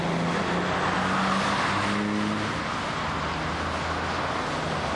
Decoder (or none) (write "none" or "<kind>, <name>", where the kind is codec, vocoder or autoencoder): none